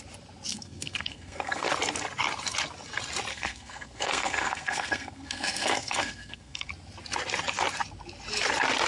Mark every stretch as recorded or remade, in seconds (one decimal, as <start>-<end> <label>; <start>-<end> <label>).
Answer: 0.0-0.5 recorded; 0.5-1.7 remade; 1.7-3.3 recorded; 3.3-6.7 remade; 6.7-8.9 recorded